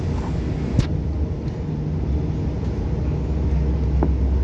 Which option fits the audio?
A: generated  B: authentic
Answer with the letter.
B